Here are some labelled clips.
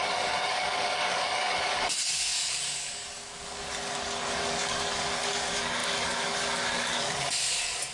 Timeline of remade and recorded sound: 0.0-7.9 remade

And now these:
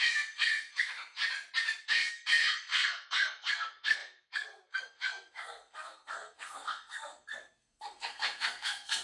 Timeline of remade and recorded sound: 0.0-1.2 remade; 1.2-1.8 recorded; 1.8-9.0 remade